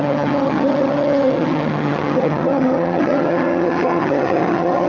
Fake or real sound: fake